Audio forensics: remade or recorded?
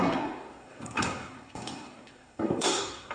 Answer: remade